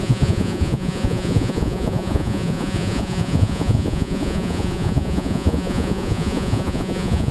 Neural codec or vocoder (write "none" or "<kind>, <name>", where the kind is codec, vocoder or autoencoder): vocoder, Vocos